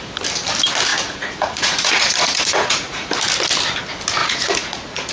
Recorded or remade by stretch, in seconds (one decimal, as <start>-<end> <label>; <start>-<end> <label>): 0.0-0.9 recorded; 0.9-3.1 remade; 3.1-4.2 recorded; 4.2-5.1 remade